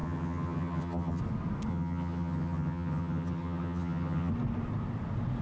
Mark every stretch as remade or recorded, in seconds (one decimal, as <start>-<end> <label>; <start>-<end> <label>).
0.0-1.2 remade; 1.2-1.7 recorded; 1.7-4.3 remade; 4.3-5.4 recorded